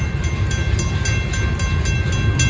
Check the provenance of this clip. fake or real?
real